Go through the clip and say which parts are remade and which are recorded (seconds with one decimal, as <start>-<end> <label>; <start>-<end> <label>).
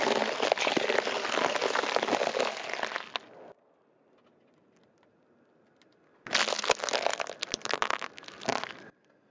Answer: 0.0-7.1 recorded; 7.1-8.4 remade; 8.4-9.3 recorded